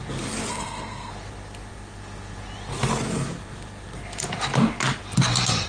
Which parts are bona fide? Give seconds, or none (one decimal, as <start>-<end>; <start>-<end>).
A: 0.0-0.5; 1.1-5.7